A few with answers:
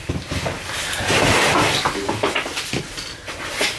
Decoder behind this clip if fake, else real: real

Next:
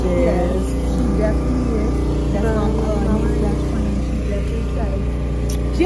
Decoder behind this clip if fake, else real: real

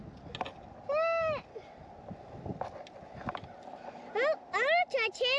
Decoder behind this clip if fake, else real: real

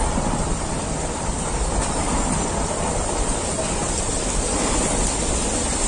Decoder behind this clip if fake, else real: real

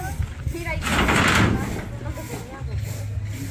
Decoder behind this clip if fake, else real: real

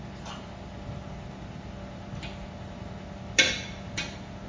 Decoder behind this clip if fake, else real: real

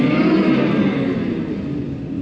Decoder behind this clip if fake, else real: real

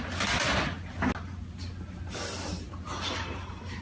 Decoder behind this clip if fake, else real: real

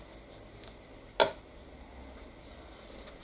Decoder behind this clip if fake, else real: real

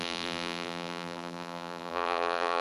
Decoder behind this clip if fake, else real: fake, vocoder, BigVGAN v2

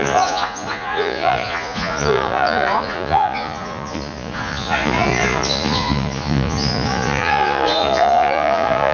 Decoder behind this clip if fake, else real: fake, vocoder, Vocos